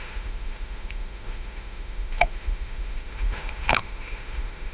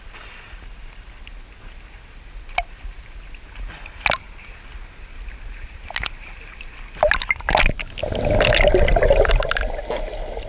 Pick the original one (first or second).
second